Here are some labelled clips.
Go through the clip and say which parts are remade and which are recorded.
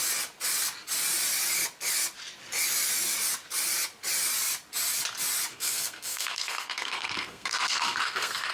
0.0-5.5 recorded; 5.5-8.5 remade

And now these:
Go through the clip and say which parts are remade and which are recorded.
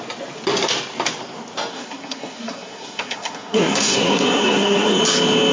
0.0-1.7 recorded; 1.7-5.0 remade; 5.0-5.5 recorded